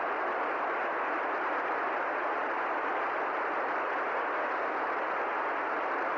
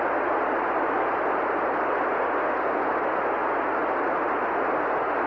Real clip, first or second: second